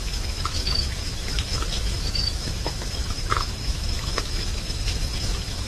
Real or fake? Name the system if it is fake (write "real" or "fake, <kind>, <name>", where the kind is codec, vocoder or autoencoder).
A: fake, autoencoder, DAC-VAE